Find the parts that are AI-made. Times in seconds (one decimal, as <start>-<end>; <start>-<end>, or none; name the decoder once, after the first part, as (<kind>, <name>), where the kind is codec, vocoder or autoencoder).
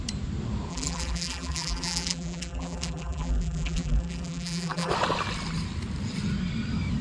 0.7-4.9 (vocoder, BigVGAN v2)